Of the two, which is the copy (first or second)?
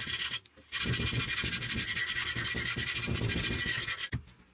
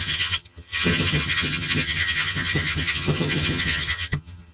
second